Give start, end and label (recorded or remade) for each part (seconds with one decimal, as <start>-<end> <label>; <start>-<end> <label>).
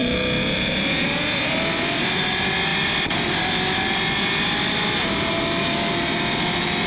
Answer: 0.0-6.9 recorded